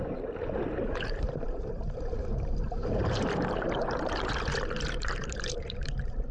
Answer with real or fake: fake